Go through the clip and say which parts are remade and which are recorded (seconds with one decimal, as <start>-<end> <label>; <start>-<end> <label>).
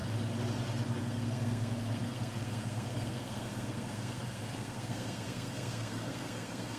0.0-1.0 recorded; 1.0-6.8 remade